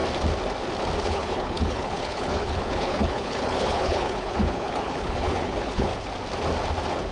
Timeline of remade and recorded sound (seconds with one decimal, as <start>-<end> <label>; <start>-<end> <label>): 0.0-1.0 recorded; 1.0-5.9 remade; 5.9-7.1 recorded